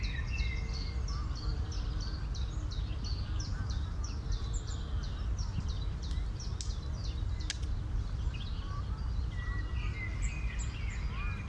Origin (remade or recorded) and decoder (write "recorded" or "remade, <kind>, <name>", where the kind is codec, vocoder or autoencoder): recorded